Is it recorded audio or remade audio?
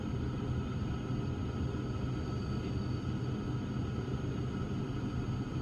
recorded